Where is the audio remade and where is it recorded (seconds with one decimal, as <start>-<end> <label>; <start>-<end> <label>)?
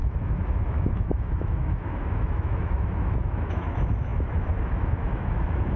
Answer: 0.0-5.8 remade